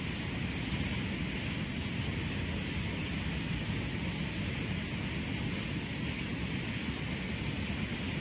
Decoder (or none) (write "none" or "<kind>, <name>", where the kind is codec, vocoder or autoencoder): none